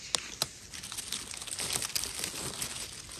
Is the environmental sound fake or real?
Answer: real